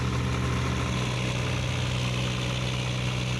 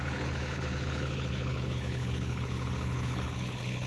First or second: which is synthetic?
second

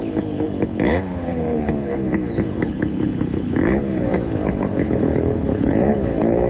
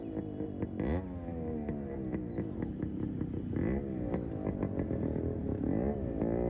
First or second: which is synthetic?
first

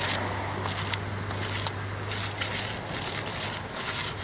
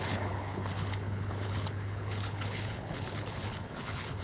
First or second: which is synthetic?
second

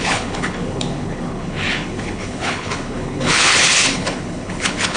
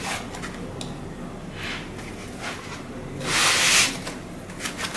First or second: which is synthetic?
first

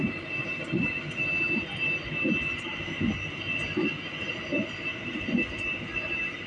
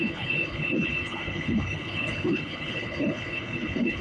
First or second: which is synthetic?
second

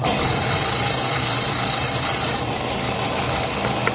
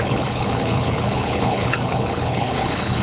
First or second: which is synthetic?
second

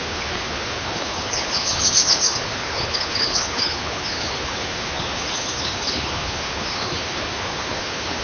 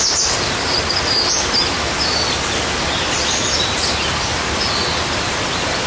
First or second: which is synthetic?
first